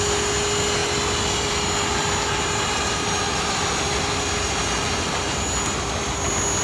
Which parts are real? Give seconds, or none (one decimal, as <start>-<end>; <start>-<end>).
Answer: 0.0-6.6